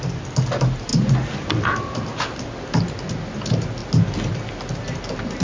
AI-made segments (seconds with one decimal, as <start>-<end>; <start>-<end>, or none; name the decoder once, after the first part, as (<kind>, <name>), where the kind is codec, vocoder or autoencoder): none